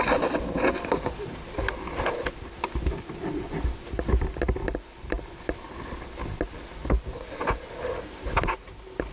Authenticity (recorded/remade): recorded